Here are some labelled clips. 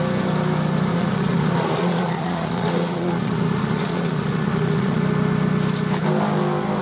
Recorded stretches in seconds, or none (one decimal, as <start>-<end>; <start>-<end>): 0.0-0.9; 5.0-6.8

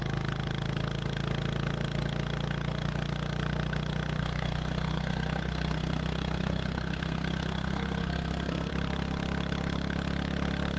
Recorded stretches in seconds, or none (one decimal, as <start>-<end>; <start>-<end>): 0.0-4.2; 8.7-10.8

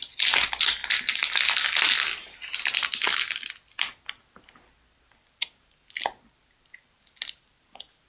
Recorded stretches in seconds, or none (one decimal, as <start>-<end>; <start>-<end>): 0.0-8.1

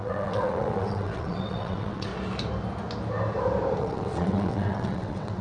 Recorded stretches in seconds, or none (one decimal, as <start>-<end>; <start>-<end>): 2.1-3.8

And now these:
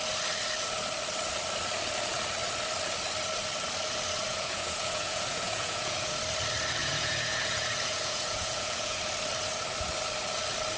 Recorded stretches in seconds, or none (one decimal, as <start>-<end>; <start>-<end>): 0.0-4.3; 6.2-6.8; 9.0-10.8